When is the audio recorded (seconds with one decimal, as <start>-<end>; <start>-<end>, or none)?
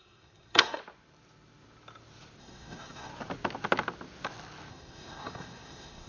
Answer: 0.8-2.4; 3.1-4.7